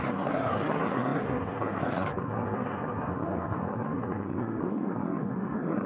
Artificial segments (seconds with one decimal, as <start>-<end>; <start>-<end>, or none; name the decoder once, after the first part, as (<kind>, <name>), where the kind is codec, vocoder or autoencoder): 0.0-5.9 (codec, SNAC)

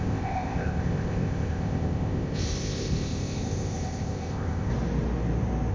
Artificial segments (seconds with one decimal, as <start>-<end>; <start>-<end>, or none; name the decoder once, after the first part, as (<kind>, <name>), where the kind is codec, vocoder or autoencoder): 0.0-4.7 (codec, ZipCodec)

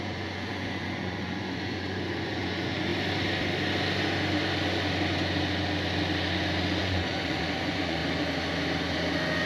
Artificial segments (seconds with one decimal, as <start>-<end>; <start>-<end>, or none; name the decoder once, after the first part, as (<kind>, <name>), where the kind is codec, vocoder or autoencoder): 0.0-2.9 (vocoder, Vocos); 6.8-8.0